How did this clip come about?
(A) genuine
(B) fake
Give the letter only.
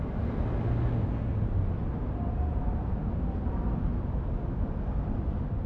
A